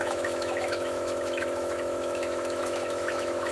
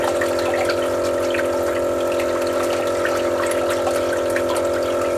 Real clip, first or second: second